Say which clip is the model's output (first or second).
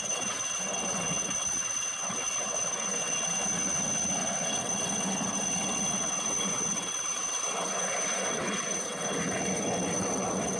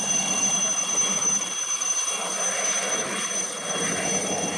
first